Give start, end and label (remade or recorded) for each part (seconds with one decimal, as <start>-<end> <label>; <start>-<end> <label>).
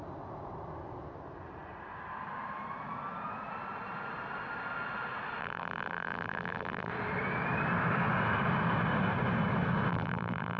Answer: 0.0-5.4 recorded; 5.4-6.9 remade; 6.9-9.9 recorded; 9.9-10.6 remade